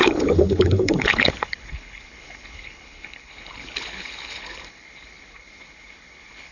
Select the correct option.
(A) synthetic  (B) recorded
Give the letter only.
A